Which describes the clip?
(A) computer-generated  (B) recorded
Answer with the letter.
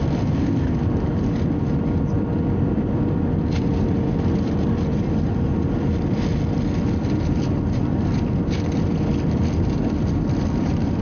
A